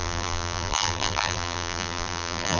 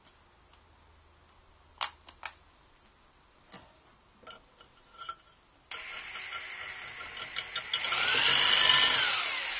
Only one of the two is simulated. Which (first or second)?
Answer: first